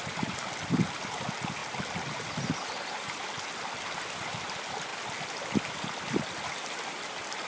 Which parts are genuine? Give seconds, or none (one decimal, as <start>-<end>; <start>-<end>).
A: 0.0-7.5